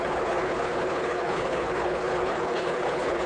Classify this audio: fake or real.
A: fake